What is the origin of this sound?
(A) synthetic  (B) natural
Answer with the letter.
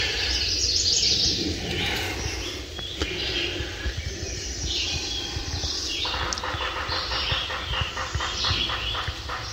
B